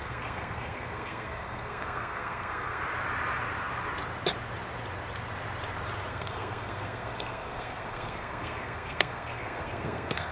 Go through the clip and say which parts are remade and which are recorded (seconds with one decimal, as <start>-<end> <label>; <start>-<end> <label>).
0.0-2.8 remade; 2.8-6.1 recorded; 6.1-10.3 remade